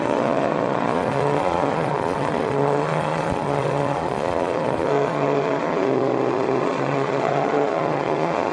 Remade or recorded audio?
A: remade